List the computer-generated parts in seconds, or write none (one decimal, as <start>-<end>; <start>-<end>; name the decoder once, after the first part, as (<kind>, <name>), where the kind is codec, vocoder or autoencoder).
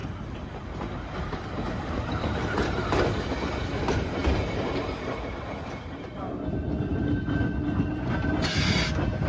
0.0-3.4 (vocoder, BigVGAN v2); 4.2-6.3; 6.9-8.3